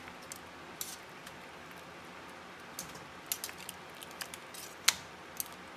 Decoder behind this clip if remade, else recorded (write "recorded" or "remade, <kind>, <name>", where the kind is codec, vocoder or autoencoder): recorded